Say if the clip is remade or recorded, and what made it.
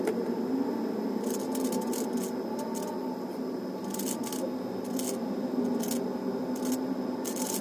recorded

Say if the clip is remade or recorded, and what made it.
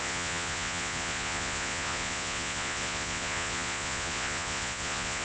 remade, vocoder, Vocos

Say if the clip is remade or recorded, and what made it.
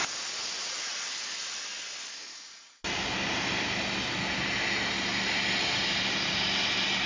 recorded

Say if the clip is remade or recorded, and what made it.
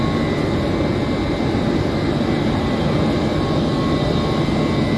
recorded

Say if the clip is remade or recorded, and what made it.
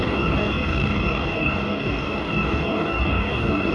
remade, codec, DAC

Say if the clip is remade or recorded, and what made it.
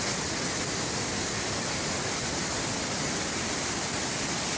recorded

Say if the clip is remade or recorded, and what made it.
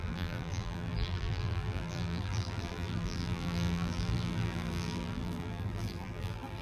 remade, vocoder, BigVGAN v2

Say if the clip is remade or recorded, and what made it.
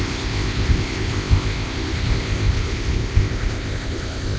remade, codec, ZipCodec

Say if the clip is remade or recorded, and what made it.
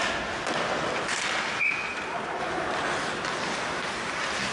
recorded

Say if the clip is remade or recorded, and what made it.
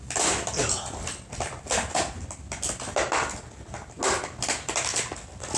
recorded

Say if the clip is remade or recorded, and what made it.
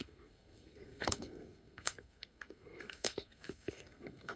remade, codec, SNAC